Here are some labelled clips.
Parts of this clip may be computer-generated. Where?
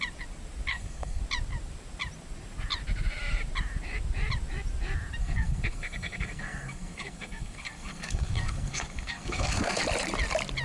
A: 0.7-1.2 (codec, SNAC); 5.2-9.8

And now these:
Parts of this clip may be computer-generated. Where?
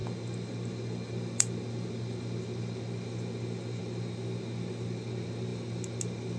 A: none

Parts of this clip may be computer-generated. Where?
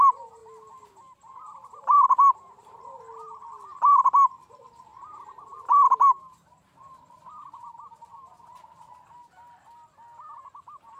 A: 0.4-3.0 (vocoder, BigVGAN v2); 4.9-8.1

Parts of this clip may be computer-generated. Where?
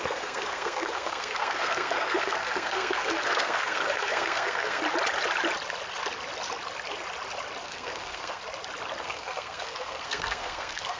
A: 0.0-4.8 (codec, SNAC); 7.6-8.4; 9.0-11.0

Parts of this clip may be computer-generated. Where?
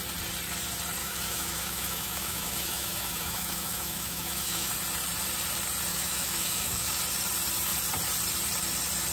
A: 1.0-4.7 (autoencoder, DAC-VAE); 5.9-6.9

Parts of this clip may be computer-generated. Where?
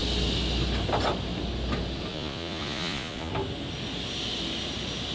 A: 2.1-3.3 (vocoder, Vocos)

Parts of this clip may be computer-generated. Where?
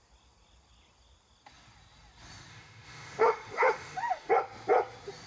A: 2.5-4.3 (autoencoder, DAC-VAE)